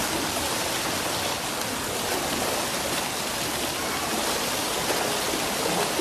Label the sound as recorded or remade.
recorded